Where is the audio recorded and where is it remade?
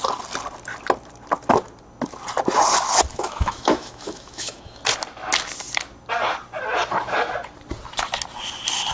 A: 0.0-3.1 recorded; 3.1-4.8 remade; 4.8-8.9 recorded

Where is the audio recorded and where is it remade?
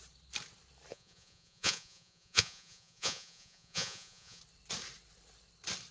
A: 0.0-0.9 recorded; 0.9-4.4 remade; 4.4-5.9 recorded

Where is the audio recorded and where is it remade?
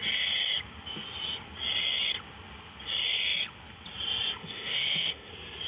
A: 0.0-4.4 recorded; 4.4-5.3 remade; 5.3-5.7 recorded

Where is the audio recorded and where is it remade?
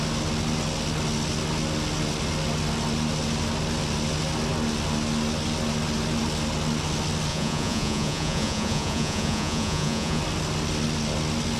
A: 0.0-7.3 recorded; 7.3-10.2 remade; 10.2-11.6 recorded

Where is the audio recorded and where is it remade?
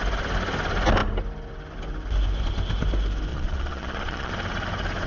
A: 0.0-3.3 recorded; 3.3-4.3 remade; 4.3-5.1 recorded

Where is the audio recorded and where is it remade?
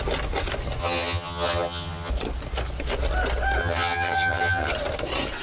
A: 0.0-0.8 recorded; 0.8-2.1 remade; 2.1-3.6 recorded; 3.6-4.7 remade; 4.7-5.4 recorded